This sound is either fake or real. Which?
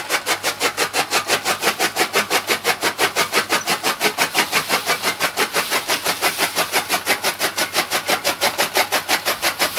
real